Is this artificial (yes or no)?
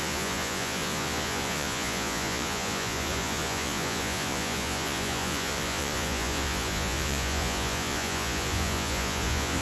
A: yes